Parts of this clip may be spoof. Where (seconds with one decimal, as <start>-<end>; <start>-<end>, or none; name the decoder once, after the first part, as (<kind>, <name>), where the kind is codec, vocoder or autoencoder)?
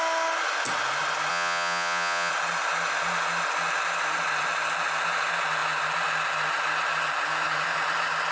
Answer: 1.3-2.3 (vocoder, Vocos)